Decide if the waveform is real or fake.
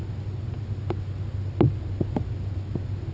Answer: real